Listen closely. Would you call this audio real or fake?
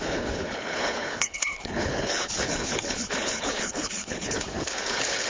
fake